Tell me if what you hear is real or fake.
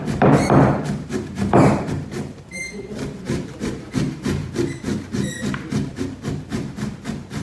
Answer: fake